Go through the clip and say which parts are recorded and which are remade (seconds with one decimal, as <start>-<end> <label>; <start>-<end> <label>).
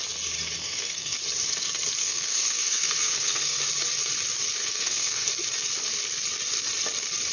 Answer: 0.0-0.6 recorded; 0.6-1.2 remade; 1.2-2.0 recorded; 2.0-3.6 remade; 3.6-4.6 recorded; 4.6-5.3 remade; 5.3-7.3 recorded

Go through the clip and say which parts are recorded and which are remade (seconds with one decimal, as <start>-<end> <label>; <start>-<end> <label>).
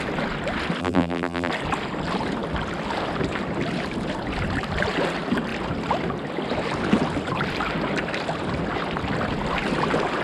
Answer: 0.0-0.8 recorded; 0.8-1.5 remade; 1.5-10.2 recorded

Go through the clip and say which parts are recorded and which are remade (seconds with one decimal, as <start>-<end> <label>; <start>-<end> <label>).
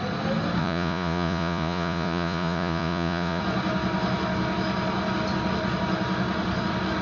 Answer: 0.0-0.6 recorded; 0.6-3.4 remade; 3.4-7.0 recorded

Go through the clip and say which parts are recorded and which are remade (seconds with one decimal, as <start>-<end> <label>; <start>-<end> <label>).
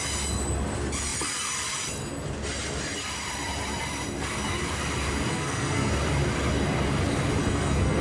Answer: 0.0-5.3 recorded; 5.3-5.9 remade; 5.9-7.4 recorded; 7.4-8.0 remade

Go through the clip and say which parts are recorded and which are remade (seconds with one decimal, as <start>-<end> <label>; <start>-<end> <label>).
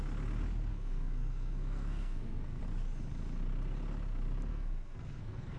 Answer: 0.0-0.7 recorded; 0.7-2.6 remade; 2.6-4.5 recorded; 4.5-5.6 remade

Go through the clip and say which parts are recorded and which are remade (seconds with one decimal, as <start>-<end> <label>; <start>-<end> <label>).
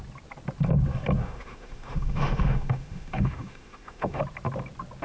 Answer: 0.0-1.2 recorded; 1.2-4.2 remade; 4.2-5.0 recorded